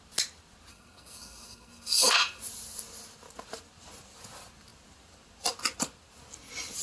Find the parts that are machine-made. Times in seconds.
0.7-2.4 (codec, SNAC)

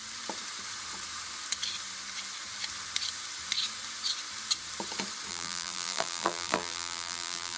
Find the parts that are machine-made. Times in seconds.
5.3-7.6 (vocoder, BigVGAN v2)